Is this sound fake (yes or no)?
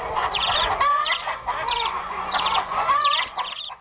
yes